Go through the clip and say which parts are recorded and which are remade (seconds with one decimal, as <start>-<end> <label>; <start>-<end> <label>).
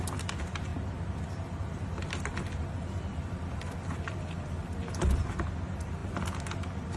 0.0-7.0 recorded